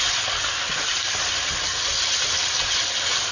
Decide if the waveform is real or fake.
real